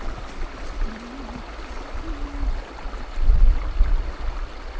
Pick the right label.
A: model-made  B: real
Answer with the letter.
B